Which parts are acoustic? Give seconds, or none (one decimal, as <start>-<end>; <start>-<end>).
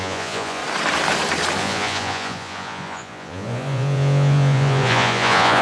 0.6-1.6